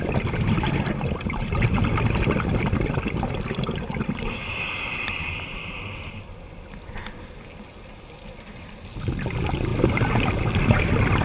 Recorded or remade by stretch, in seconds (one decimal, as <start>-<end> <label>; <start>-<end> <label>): 0.0-11.2 recorded